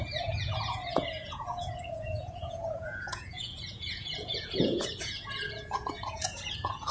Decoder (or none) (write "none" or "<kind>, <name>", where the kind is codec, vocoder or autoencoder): vocoder, Vocos